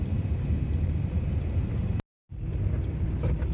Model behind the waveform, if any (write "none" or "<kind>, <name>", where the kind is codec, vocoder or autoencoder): none